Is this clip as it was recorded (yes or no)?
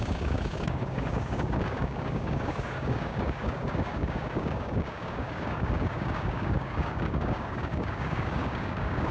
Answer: no